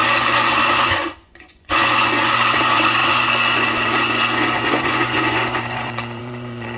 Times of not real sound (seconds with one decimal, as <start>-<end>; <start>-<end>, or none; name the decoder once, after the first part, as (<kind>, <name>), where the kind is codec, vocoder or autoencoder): 0.0-6.8 (vocoder, Vocos)